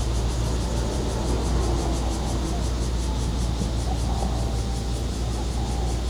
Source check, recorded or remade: recorded